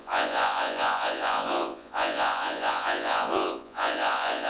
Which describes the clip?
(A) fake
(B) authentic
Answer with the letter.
A